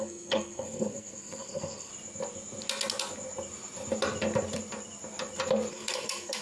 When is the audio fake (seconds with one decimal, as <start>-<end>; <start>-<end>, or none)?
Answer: 0.0-1.9; 5.7-6.4